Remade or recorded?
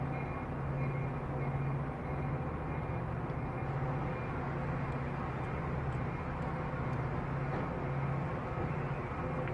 recorded